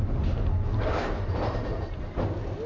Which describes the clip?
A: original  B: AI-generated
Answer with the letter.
A